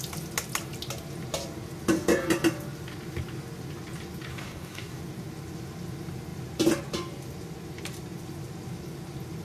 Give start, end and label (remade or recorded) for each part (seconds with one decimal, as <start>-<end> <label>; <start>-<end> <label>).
0.0-4.3 recorded; 4.3-5.0 remade; 5.0-9.4 recorded